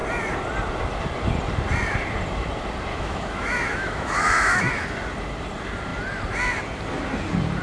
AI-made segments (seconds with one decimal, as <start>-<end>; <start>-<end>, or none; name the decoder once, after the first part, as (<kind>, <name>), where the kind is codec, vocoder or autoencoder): 2.9-4.7 (autoencoder, DAC-VAE)